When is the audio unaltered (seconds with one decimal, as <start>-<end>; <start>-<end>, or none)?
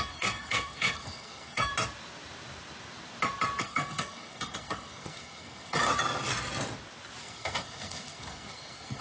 1.7-3.6; 5.9-7.2